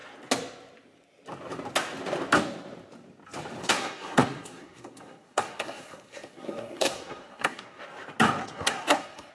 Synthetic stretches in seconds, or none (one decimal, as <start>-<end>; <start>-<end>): 3.6-7.8; 8.4-9.3